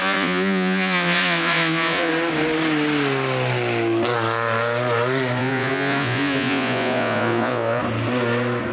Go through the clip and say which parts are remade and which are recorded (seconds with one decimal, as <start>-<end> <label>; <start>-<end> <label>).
0.0-2.1 remade; 2.1-5.4 recorded; 5.4-7.8 remade; 7.8-8.7 recorded